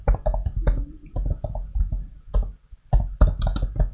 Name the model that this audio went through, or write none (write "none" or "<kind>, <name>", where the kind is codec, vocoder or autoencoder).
none